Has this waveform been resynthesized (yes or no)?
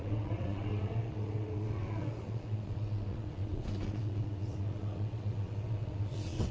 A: yes